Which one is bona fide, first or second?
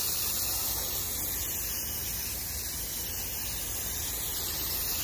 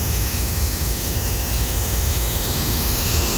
first